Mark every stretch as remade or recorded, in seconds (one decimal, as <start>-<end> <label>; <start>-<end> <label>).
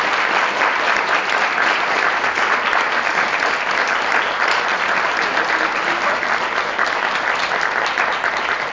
0.0-8.7 recorded